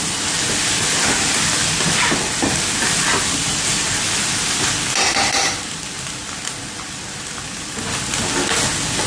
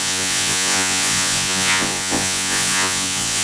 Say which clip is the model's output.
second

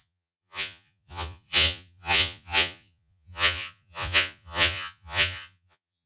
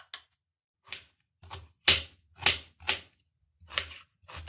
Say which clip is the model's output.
first